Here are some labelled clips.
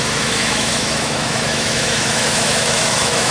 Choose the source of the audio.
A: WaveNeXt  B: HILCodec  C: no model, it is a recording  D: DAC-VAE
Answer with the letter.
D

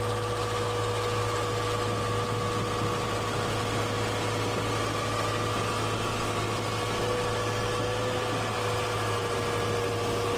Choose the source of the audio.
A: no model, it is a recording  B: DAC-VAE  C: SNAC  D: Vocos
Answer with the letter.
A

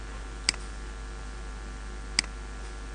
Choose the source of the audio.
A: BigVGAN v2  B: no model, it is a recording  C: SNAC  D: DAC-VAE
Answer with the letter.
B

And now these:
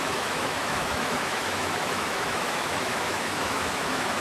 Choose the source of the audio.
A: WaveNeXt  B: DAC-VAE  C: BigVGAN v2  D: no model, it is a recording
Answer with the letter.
B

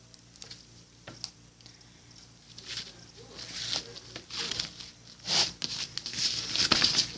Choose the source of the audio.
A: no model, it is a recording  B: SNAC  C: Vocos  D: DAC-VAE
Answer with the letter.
A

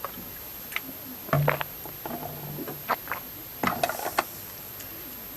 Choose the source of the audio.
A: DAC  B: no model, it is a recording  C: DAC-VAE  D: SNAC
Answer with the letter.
B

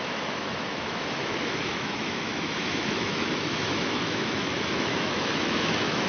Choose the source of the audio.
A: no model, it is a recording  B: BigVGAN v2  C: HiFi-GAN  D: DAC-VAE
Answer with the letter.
D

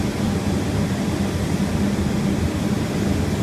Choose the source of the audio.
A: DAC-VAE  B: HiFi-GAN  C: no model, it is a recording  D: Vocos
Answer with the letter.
C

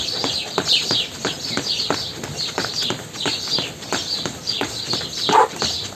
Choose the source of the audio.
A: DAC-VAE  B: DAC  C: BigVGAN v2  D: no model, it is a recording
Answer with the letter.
D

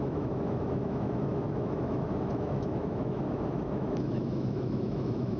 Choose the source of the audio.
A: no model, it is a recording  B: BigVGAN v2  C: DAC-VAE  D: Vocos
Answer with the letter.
C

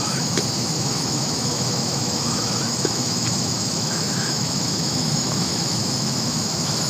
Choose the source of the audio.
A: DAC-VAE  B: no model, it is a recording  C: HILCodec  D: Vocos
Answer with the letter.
A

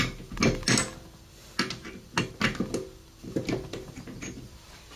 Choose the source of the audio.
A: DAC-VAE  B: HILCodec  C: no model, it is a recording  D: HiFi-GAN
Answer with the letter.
C